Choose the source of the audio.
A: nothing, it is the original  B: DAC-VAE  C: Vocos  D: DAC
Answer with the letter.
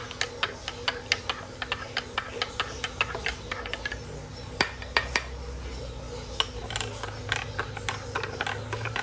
A